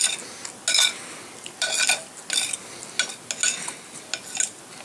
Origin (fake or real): real